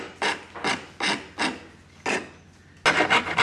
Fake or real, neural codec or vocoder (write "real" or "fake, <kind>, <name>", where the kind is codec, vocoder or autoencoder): real